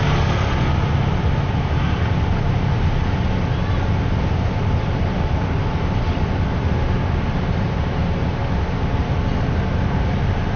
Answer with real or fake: real